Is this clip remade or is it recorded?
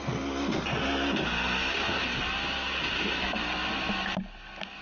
recorded